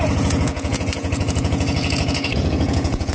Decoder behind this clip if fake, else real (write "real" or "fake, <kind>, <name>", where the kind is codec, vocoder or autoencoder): fake, vocoder, Vocos